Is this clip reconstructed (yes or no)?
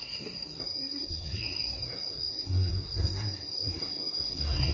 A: yes